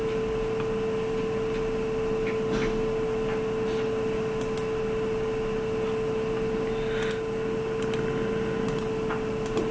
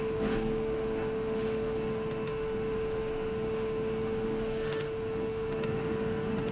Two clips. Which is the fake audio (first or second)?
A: second